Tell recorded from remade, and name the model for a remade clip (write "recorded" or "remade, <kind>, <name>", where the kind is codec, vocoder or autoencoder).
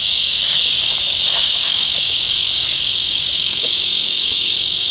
remade, codec, DAC